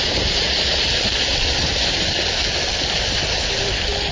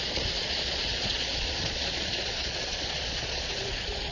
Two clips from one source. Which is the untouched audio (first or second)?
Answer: first